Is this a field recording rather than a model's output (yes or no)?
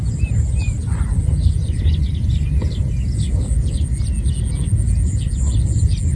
yes